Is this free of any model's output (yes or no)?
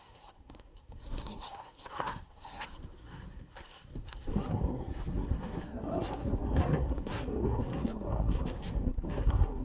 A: no